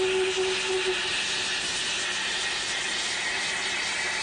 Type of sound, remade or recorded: recorded